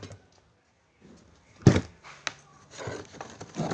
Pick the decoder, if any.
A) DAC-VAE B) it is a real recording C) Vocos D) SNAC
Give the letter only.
B